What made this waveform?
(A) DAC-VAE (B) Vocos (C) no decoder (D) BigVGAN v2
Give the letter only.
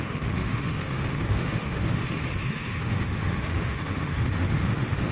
A